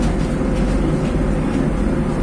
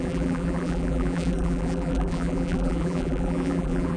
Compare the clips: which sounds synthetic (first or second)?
second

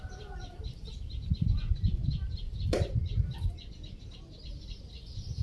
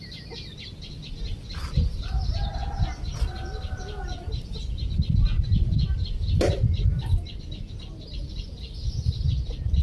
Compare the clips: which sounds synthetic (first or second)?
first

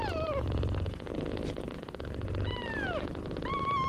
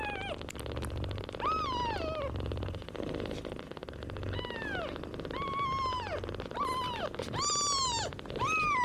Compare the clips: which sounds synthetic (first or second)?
first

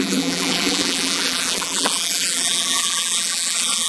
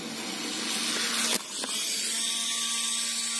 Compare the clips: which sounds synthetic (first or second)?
first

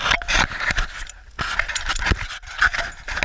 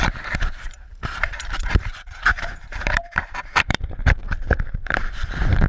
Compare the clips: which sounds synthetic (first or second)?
second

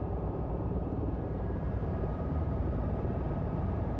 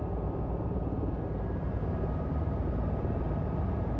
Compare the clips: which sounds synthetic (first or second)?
first